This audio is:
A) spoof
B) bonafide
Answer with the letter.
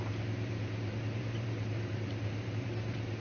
A